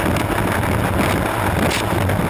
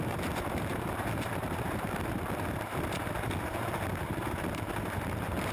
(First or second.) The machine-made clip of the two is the second